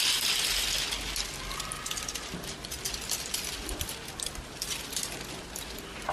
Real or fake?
real